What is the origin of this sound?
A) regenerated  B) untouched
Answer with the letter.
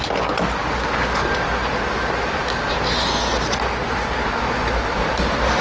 B